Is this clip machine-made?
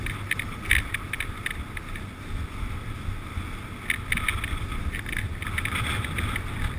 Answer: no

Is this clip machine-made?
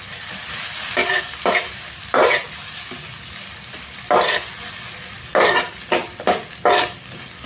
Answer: no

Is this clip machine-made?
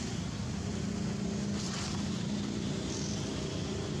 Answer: no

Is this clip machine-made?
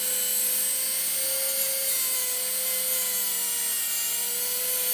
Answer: no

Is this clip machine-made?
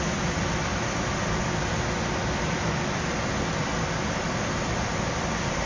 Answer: no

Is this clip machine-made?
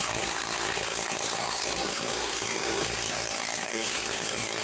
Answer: yes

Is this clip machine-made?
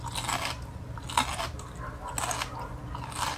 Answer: no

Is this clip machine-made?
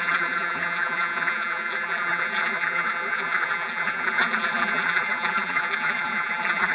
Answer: yes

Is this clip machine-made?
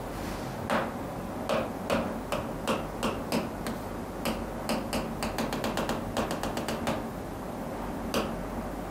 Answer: no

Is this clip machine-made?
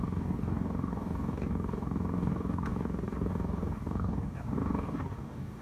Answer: yes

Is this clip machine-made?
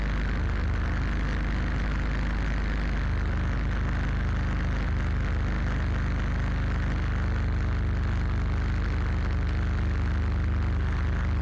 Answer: no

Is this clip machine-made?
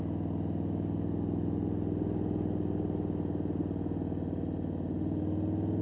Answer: no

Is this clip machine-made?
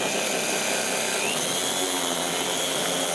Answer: no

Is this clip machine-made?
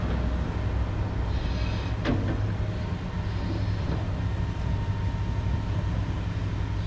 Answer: no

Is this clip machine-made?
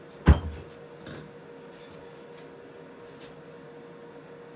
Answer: no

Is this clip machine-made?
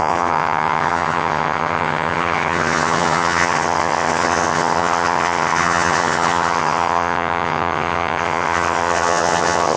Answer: yes